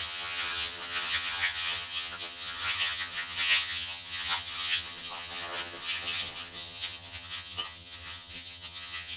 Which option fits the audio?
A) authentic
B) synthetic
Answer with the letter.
B